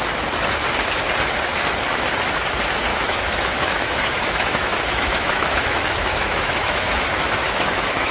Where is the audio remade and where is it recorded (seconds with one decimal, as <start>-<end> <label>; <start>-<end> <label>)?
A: 0.0-2.9 recorded; 2.9-8.1 remade